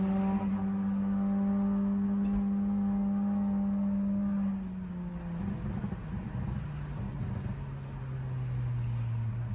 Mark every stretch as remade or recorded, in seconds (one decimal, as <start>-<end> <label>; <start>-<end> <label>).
0.0-9.5 recorded